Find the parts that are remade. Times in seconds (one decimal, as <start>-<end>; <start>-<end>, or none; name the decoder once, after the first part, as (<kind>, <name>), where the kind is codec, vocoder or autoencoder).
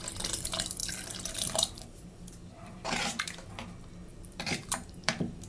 0.8-3.5 (vocoder, BigVGAN v2); 4.1-5.1